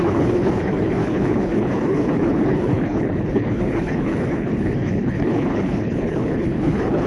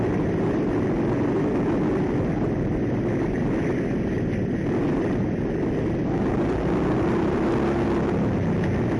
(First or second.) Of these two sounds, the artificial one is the first